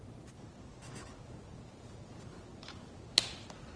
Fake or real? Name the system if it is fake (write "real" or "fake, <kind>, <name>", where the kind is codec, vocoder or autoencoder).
real